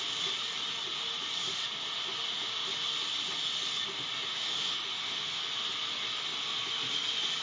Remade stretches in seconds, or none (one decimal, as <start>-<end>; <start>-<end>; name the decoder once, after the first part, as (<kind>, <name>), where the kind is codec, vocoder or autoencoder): 4.3-5.4 (autoencoder, DAC-VAE)